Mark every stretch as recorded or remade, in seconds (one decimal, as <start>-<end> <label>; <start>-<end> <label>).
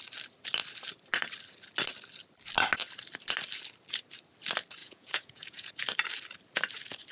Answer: 0.0-4.8 recorded; 4.8-5.7 remade; 5.7-7.1 recorded